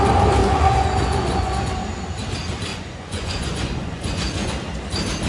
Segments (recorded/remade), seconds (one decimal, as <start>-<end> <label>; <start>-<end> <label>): 0.0-0.4 recorded; 0.4-1.7 remade; 1.7-2.7 recorded; 2.7-4.5 remade; 4.5-5.3 recorded